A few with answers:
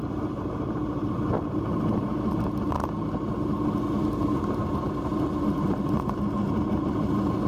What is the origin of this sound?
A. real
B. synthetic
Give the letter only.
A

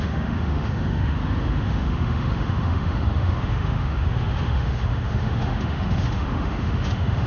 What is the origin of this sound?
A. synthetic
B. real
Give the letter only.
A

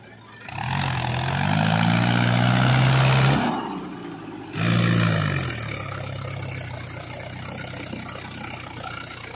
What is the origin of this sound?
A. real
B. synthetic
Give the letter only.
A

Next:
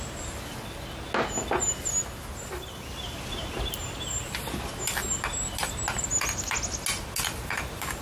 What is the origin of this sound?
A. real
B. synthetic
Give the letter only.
A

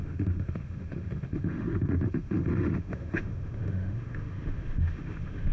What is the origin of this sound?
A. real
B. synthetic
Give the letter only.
B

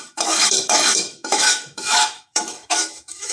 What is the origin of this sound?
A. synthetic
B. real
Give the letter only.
A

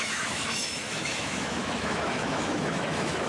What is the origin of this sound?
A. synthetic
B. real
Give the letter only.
A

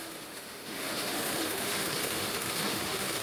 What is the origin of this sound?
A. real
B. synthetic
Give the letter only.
B